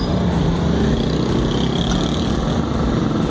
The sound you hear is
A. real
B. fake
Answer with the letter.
A